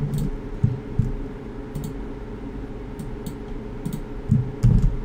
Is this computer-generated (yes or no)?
no